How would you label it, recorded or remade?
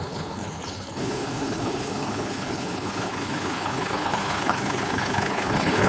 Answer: remade